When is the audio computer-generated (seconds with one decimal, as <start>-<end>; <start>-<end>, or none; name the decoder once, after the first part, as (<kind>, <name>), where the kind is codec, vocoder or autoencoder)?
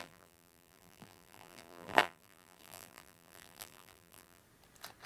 0.0-4.4 (vocoder, BigVGAN v2)